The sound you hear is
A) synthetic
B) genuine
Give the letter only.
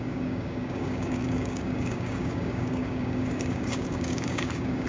A